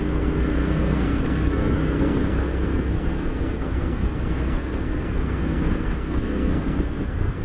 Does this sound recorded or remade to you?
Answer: remade